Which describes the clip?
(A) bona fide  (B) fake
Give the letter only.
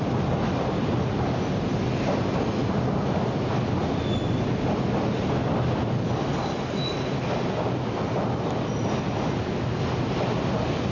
A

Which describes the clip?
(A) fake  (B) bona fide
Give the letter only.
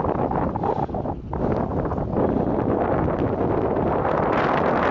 B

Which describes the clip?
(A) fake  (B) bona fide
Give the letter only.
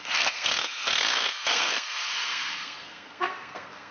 A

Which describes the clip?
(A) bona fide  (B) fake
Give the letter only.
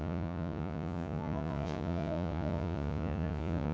B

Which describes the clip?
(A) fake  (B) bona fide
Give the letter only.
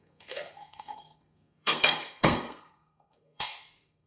A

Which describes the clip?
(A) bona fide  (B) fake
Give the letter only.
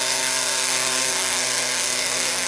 B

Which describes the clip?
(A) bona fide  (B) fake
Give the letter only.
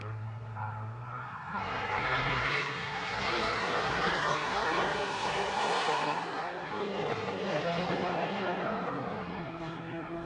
B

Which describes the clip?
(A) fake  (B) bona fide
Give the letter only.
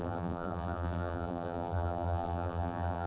A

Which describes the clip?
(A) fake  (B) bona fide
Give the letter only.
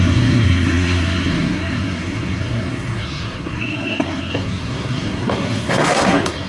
A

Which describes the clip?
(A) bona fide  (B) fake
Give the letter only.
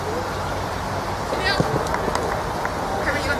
A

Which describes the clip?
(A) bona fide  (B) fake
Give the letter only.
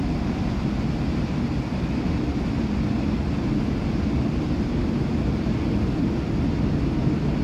A